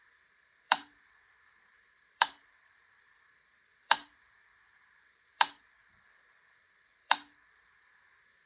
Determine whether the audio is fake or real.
fake